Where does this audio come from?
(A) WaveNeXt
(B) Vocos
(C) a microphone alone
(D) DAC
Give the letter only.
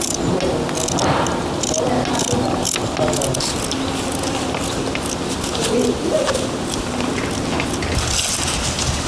C